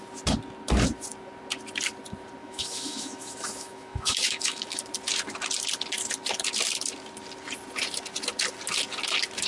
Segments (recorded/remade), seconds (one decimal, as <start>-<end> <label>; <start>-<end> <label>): 0.0-2.4 recorded; 2.4-4.8 remade; 4.8-9.5 recorded